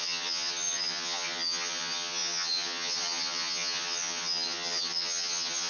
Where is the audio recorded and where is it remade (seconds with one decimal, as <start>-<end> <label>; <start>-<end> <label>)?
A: 0.0-5.7 remade